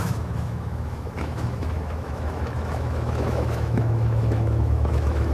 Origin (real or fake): fake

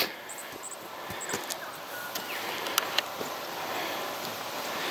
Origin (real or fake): real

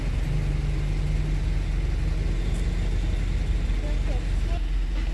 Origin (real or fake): real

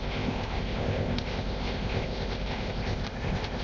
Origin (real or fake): fake